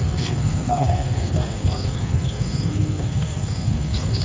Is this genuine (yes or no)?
no